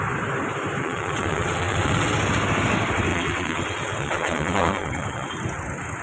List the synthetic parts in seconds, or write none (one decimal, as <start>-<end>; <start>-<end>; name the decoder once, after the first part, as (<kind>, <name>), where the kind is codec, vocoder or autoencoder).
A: 0.8-2.1 (vocoder, WaveNeXt); 3.1-5.3